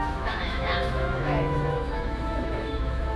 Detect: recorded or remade remade